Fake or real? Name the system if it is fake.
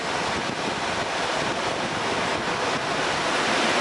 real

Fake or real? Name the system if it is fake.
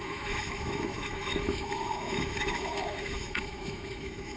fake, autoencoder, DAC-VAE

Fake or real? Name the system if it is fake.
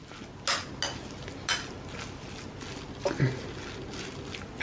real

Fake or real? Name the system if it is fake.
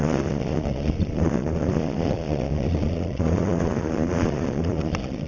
fake, vocoder, Vocos